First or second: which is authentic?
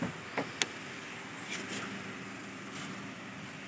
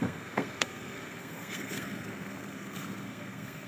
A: first